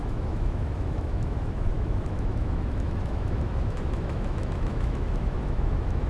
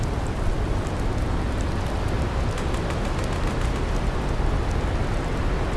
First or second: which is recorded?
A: second